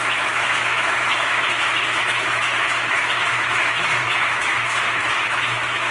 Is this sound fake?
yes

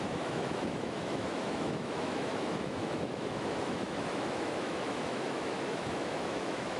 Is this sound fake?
yes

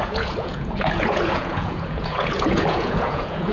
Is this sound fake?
yes